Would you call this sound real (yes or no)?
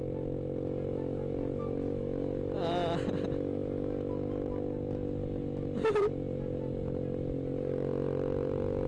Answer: yes